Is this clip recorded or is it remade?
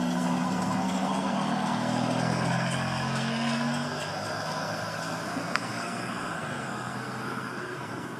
remade